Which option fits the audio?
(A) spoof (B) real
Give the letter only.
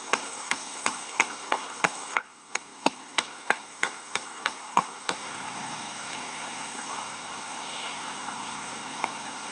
A